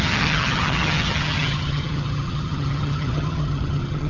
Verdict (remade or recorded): remade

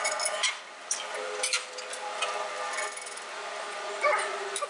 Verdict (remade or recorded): recorded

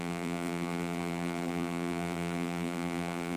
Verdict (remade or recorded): remade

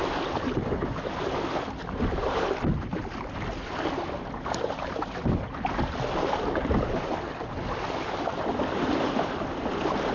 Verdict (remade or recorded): recorded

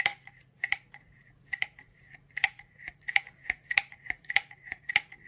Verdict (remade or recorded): remade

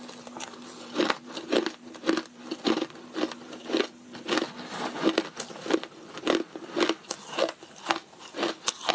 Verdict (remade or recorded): recorded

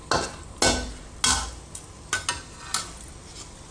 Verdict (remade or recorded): recorded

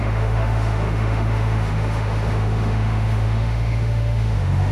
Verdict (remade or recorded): remade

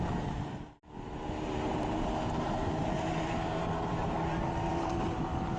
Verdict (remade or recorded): remade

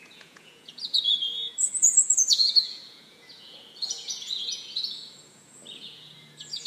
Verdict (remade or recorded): remade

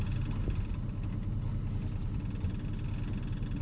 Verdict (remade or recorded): recorded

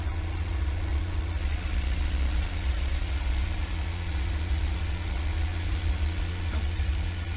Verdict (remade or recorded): remade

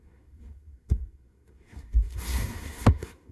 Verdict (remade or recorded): remade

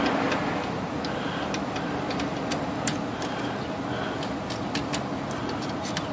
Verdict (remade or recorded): recorded